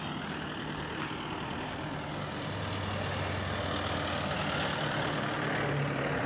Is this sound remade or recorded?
recorded